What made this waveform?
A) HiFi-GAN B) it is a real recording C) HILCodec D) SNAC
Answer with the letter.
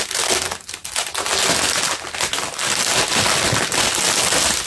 B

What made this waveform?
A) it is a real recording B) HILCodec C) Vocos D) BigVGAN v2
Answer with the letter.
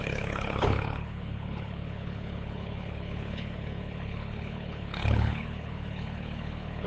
B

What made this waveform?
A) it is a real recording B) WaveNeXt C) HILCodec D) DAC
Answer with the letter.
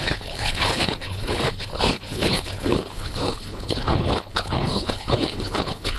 C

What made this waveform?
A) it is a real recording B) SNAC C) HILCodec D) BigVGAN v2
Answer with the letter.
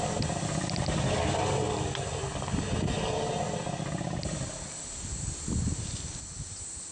A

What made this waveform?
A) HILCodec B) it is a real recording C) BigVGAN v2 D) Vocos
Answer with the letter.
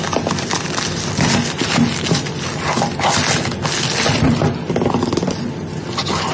B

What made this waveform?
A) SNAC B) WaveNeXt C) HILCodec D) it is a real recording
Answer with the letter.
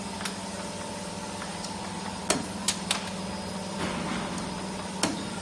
D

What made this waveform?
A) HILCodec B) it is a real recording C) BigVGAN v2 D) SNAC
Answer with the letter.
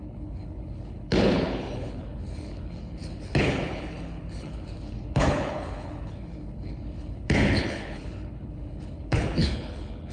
A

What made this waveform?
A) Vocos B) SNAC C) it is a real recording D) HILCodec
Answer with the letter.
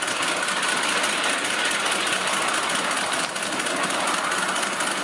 C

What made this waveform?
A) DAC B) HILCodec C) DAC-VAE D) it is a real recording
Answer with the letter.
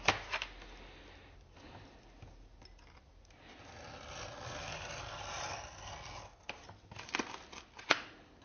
D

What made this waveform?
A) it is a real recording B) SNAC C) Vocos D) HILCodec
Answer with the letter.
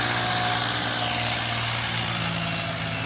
A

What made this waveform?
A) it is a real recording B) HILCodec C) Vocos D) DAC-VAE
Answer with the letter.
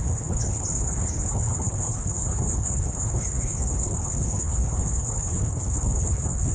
B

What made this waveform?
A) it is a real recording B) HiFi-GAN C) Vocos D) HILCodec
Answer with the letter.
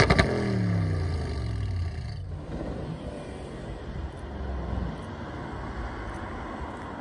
A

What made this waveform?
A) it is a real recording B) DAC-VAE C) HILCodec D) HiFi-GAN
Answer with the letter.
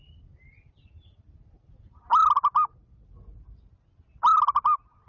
A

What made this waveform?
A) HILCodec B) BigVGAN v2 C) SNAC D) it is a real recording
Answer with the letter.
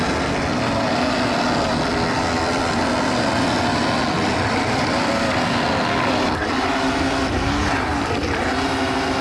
D